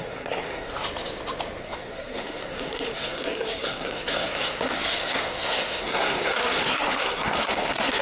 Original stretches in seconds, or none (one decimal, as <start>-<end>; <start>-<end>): 0.7-1.6